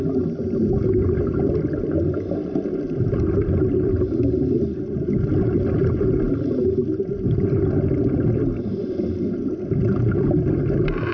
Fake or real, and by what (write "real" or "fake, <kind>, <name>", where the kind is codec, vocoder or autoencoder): real